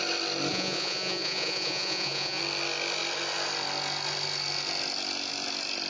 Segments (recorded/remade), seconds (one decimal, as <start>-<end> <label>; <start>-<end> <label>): 0.0-0.5 recorded; 0.5-2.4 remade; 2.4-5.9 recorded